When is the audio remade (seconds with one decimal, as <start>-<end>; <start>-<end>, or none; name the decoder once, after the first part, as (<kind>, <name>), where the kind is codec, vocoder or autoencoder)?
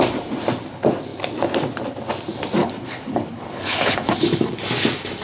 2.6-4.1 (codec, HILCodec)